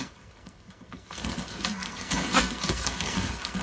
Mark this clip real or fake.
fake